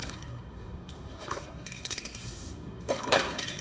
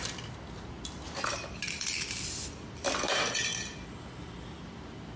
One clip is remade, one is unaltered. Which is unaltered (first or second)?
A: second